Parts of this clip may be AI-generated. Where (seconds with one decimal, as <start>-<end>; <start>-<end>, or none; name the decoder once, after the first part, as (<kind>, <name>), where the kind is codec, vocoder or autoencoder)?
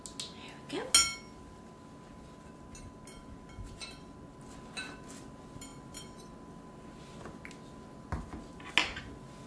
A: none